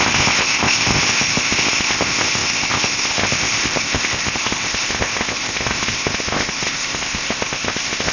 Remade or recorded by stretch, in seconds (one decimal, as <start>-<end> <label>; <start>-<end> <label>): 0.0-8.1 remade